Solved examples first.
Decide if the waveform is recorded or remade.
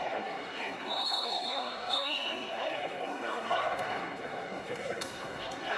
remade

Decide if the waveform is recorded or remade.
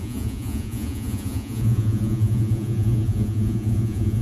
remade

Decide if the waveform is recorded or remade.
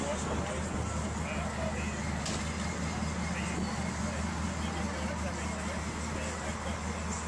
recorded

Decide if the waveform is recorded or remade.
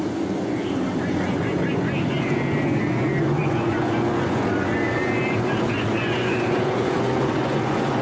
remade